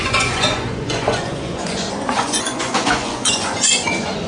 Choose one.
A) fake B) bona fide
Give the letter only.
A